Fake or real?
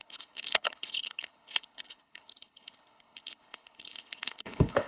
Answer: fake